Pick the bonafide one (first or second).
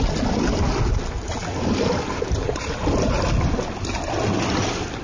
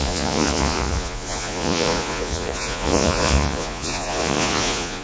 first